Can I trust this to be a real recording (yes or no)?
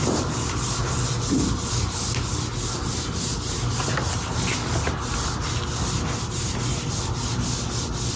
yes